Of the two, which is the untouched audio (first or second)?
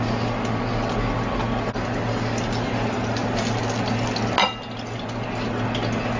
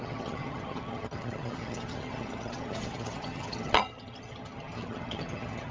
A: first